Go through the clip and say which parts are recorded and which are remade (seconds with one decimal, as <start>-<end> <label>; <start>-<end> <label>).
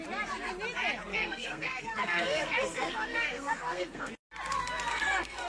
0.0-1.1 recorded; 1.1-4.1 remade; 4.1-4.9 recorded; 4.9-5.5 remade